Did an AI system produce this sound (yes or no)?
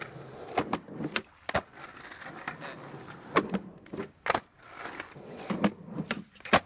no